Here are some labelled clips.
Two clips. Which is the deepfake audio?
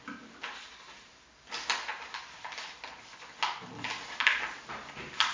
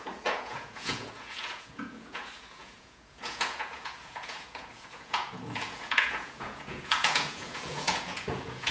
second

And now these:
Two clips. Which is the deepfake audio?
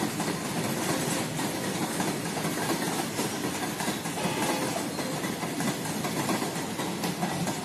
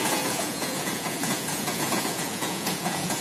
second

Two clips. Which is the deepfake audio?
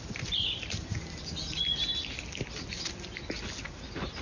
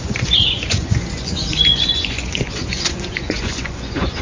second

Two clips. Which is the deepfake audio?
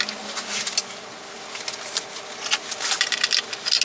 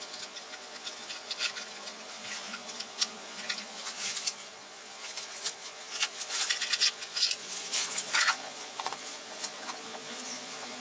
second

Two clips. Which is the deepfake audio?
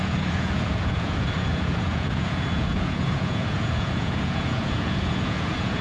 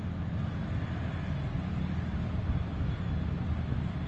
first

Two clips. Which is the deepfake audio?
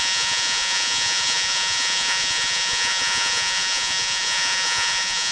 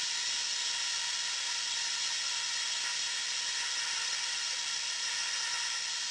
first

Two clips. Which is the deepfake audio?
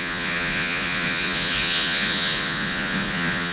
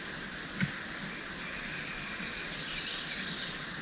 first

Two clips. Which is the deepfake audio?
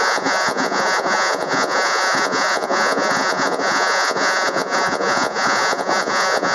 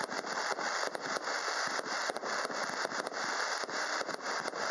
first